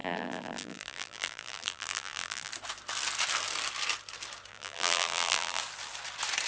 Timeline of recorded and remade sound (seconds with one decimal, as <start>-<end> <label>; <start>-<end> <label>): 0.0-2.5 remade; 2.5-4.5 recorded; 4.5-5.6 remade; 5.6-6.5 recorded